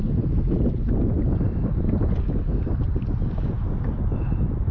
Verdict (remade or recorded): recorded